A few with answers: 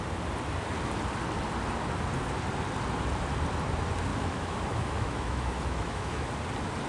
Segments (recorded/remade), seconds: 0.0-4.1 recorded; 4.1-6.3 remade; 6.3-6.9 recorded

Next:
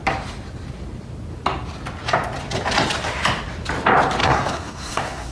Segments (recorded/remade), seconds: 0.0-4.2 recorded; 4.2-5.3 remade

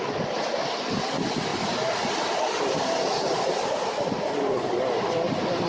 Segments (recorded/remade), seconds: 0.0-5.7 recorded

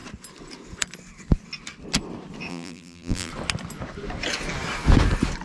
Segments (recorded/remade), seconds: 0.0-2.5 recorded; 2.5-3.3 remade; 3.3-5.4 recorded

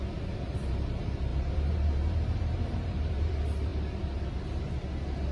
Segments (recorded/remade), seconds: 0.0-1.3 recorded; 1.3-3.3 remade; 3.3-5.3 recorded